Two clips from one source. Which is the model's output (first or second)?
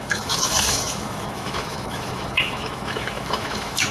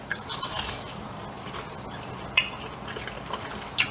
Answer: first